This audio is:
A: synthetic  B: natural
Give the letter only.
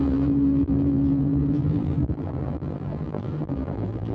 A